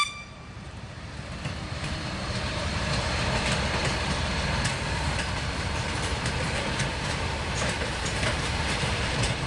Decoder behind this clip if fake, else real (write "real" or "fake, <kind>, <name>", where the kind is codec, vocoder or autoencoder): fake, vocoder, BigVGAN v2